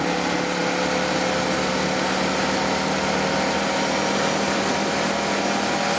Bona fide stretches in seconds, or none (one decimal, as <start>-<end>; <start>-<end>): 0.0-6.0